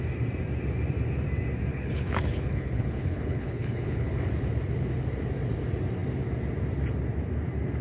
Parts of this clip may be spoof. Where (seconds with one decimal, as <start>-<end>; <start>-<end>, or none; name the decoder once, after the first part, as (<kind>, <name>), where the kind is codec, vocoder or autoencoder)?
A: 1.7-4.2 (codec, HILCodec)